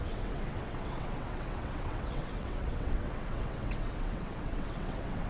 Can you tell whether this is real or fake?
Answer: fake